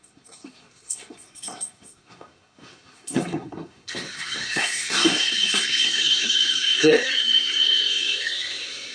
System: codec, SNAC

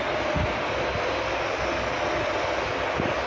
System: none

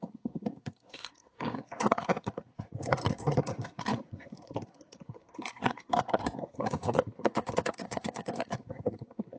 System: codec, SNAC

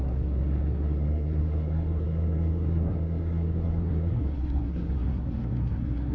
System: codec, SNAC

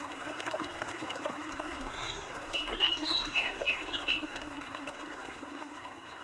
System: codec, SNAC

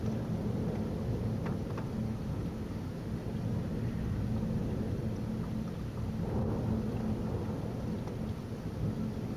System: none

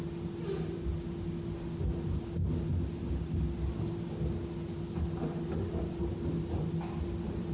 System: none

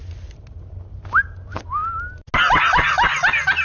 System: none